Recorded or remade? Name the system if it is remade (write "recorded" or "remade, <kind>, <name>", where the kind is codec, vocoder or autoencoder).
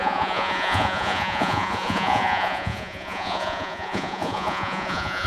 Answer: remade, vocoder, Vocos